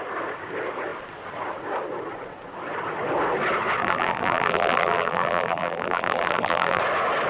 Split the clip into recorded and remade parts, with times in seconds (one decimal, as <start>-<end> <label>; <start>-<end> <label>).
0.0-3.8 recorded; 3.8-6.8 remade; 6.8-7.3 recorded